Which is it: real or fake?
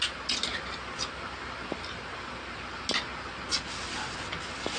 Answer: real